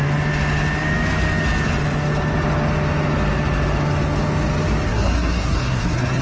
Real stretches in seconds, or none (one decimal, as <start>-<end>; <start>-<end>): 0.0-4.9